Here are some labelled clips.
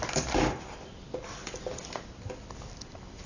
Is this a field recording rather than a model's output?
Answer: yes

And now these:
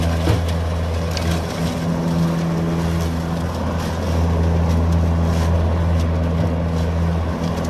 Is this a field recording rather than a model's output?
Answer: yes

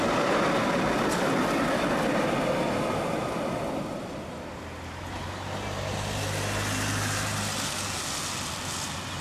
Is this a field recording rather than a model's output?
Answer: yes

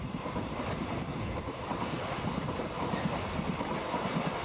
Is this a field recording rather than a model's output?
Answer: yes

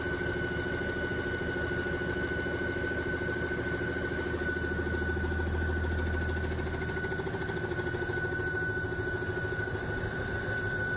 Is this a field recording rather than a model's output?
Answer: yes